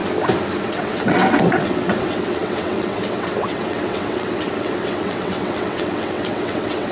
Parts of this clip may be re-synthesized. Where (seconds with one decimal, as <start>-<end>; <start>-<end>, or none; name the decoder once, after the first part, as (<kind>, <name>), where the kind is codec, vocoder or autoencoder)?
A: 0.6-6.9 (vocoder, WaveNeXt)